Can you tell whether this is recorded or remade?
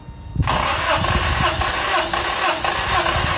recorded